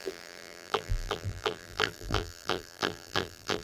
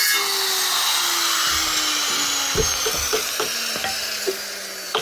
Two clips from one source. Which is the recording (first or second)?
second